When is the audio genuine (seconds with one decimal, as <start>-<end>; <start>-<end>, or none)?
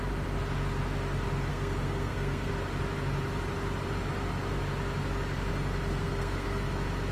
0.0-1.5; 2.5-5.9; 6.6-7.1